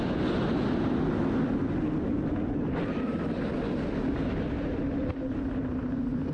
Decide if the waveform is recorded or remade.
recorded